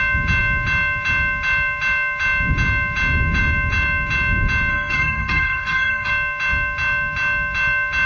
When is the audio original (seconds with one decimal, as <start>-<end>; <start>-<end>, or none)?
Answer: 0.0-4.7; 6.1-8.1